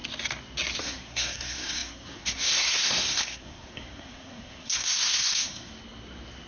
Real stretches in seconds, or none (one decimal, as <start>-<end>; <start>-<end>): 0.0-0.8; 5.7-6.5